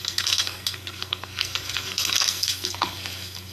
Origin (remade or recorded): remade